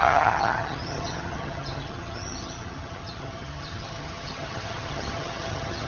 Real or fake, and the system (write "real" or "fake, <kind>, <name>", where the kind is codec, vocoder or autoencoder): fake, vocoder, HiFi-GAN